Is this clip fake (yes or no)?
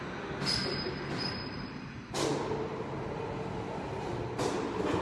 no